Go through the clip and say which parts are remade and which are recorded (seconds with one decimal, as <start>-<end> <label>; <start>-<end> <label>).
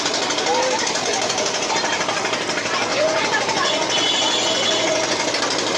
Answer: 0.0-1.0 recorded; 1.0-1.7 remade; 1.7-2.9 recorded; 2.9-5.3 remade; 5.3-5.8 recorded